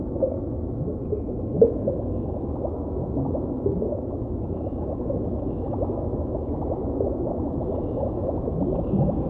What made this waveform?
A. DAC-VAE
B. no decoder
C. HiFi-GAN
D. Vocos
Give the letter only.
A